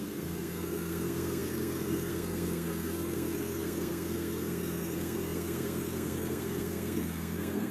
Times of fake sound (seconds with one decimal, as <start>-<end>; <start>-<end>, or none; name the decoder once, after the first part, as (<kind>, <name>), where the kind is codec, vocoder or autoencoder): 0.0-7.7 (codec, SNAC)